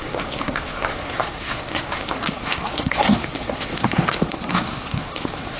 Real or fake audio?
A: fake